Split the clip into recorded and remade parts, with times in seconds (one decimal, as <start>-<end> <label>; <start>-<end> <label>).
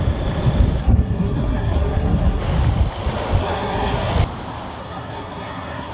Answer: 0.0-0.8 recorded; 0.8-2.4 remade; 2.4-3.4 recorded; 3.4-4.1 remade; 4.1-4.8 recorded; 4.8-5.9 remade